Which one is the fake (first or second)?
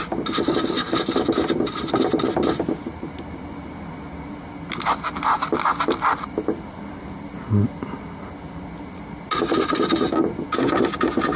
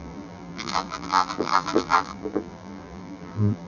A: second